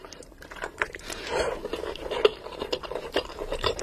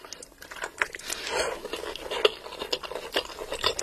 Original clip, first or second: second